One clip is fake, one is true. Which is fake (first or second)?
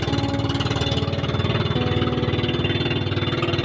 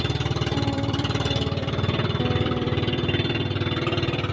second